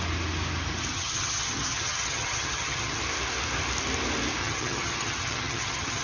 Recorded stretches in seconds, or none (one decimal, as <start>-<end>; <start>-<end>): 0.0-0.9; 3.0-4.4